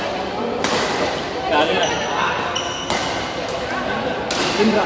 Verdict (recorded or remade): recorded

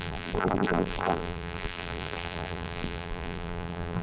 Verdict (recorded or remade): remade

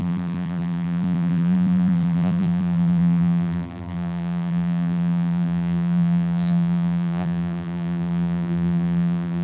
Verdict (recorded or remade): remade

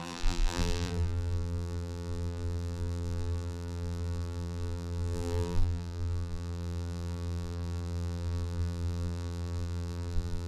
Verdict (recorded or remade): remade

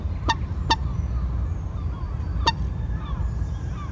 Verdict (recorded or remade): recorded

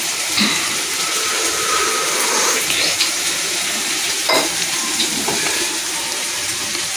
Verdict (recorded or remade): remade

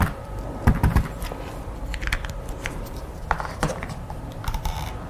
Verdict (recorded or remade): remade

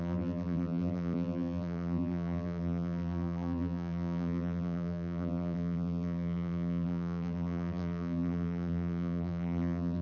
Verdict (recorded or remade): remade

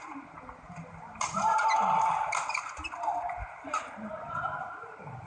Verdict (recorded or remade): recorded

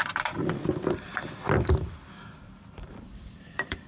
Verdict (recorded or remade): remade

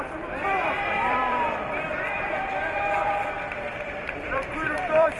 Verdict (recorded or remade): remade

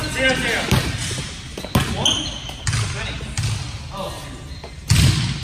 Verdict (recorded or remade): recorded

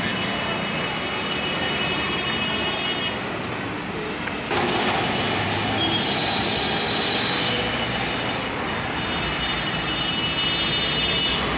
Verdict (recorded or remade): recorded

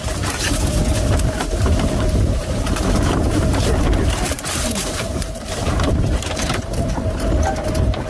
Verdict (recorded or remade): remade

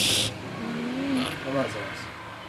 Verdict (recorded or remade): remade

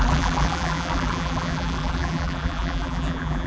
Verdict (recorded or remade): remade